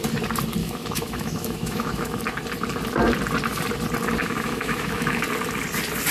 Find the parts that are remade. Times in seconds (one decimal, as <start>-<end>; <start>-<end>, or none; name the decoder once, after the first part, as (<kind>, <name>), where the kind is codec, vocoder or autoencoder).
0.6-2.2 (autoencoder, DAC-VAE); 4.2-5.2